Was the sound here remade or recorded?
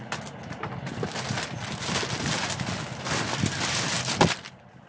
recorded